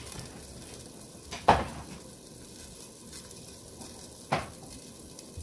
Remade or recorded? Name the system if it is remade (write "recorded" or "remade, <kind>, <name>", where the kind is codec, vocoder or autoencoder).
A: recorded